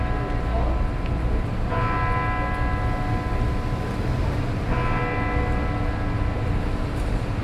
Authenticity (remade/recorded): recorded